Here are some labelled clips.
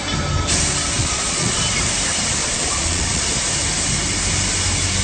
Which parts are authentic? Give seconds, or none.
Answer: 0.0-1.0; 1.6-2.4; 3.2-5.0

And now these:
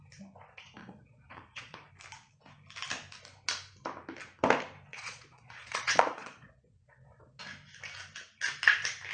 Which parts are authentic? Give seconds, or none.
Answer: 0.0-0.8; 1.9-4.9; 7.4-9.1

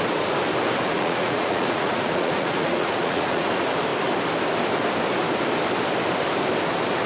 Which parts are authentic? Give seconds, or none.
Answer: 0.0-0.9; 3.5-7.1

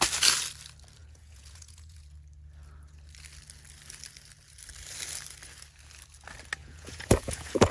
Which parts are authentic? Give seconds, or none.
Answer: 0.0-1.0; 2.0-6.6

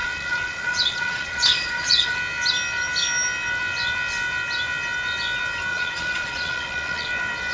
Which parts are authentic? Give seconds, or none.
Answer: 2.1-5.7; 7.1-7.5

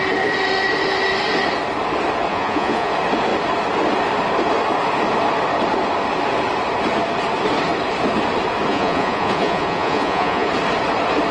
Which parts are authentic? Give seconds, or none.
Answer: 0.0-2.3; 2.9-8.7; 10.5-11.3